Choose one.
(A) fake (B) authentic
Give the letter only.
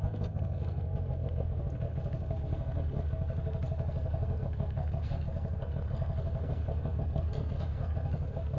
A